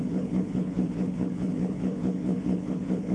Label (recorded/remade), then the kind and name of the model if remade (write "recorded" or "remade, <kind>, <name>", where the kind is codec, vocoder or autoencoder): remade, codec, HILCodec